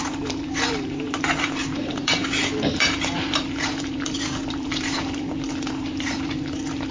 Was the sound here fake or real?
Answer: fake